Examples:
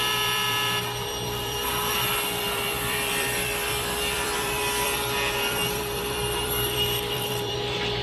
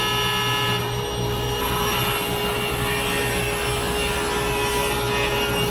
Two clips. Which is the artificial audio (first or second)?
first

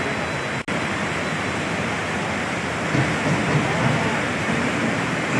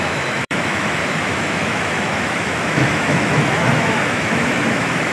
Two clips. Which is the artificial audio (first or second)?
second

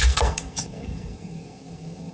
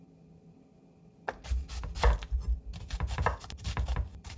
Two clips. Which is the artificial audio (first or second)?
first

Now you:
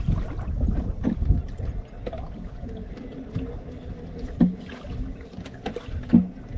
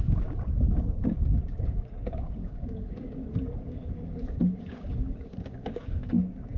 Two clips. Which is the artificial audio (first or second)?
second